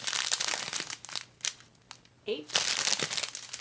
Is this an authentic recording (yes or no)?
yes